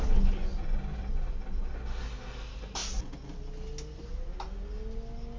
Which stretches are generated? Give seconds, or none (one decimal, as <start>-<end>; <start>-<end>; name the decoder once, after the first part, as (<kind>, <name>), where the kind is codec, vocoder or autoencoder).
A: none